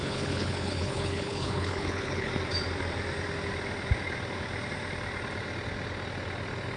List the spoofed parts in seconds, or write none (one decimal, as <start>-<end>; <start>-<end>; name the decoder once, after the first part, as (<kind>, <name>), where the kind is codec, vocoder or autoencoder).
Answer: 0.0-2.3 (codec, HILCodec)